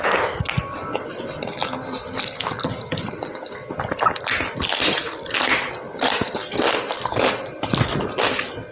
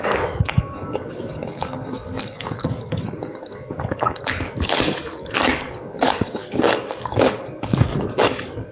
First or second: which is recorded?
first